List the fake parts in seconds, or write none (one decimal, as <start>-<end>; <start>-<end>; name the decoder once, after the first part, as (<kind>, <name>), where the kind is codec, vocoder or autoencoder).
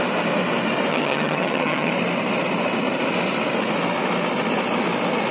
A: 0.9-1.9 (vocoder, HiFi-GAN)